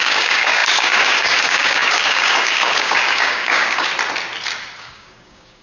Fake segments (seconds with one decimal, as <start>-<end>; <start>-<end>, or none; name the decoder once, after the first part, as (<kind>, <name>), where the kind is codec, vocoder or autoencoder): 0.0-3.9 (codec, DAC); 4.8-5.6

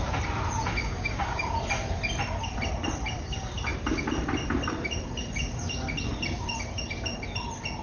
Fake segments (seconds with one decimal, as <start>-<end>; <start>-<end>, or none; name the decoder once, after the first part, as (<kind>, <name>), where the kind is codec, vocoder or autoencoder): 0.8-1.5 (codec, DAC)

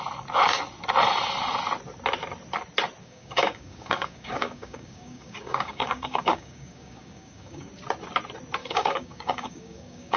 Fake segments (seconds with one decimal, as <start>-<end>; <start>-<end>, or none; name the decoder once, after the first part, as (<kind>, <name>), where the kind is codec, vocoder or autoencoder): 3.0-7.7 (codec, DAC); 8.6-10.2

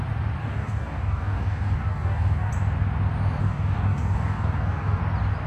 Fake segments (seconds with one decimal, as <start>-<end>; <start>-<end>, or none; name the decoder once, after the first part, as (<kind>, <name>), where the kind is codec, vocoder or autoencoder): 0.4-2.5 (codec, DAC); 3.4-5.0

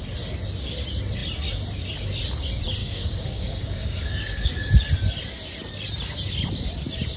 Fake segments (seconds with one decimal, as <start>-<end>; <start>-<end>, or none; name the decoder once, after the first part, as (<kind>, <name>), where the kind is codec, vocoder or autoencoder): 2.8-4.7 (codec, DAC)

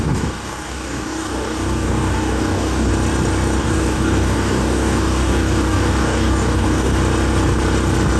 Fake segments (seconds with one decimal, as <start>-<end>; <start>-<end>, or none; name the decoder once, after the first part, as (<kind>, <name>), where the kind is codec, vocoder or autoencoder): 0.0-2.9 (codec, DAC); 3.6-6.9

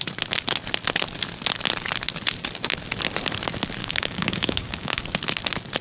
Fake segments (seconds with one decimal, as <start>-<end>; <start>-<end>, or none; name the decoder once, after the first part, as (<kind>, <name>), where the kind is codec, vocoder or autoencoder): 3.8-5.0 (codec, DAC)